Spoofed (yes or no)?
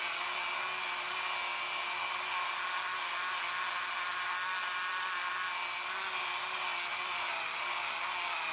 no